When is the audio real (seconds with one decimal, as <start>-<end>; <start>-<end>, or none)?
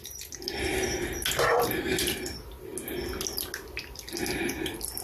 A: 0.0-5.0